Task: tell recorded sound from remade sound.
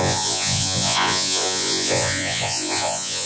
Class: remade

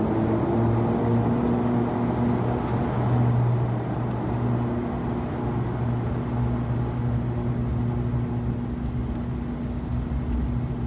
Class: recorded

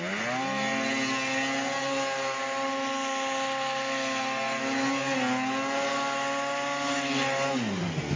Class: recorded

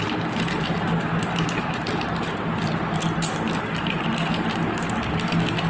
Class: recorded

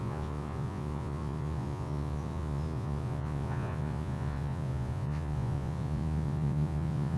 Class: remade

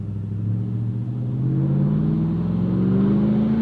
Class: recorded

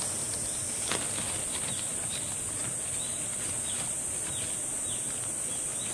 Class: recorded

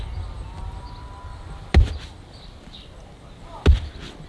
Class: recorded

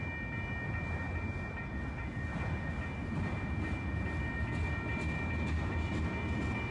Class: recorded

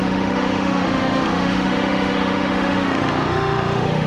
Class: remade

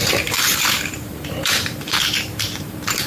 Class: remade